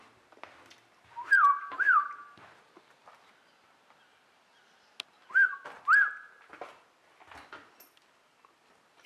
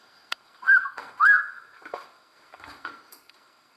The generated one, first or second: second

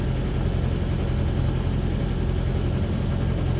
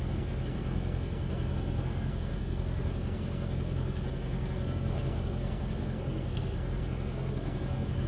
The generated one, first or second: second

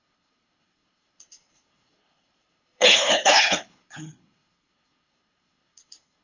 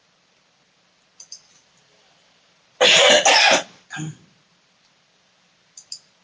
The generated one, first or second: first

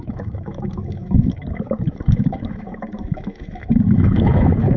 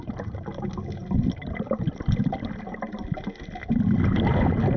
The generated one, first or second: first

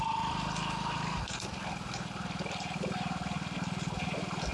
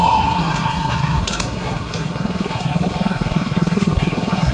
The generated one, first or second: second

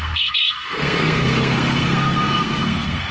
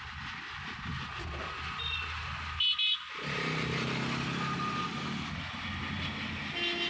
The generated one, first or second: first